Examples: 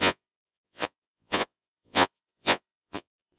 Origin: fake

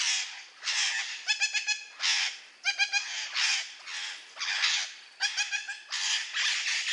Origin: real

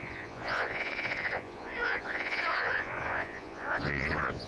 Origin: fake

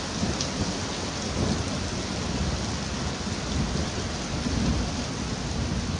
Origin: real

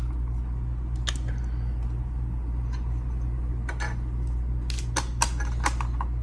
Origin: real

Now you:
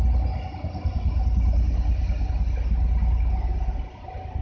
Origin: real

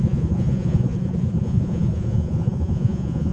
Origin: fake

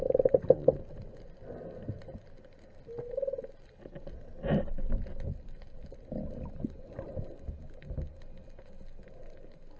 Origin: real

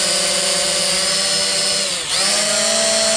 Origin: real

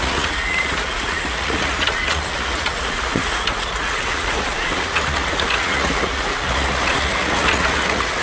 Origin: fake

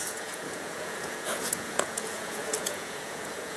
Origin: fake